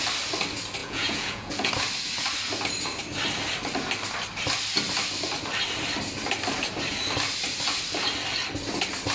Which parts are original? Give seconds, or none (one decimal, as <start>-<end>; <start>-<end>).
0.0-0.8; 1.7-9.1